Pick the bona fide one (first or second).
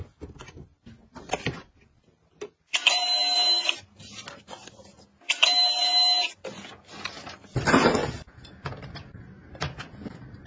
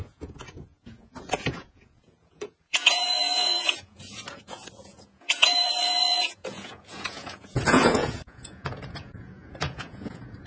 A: first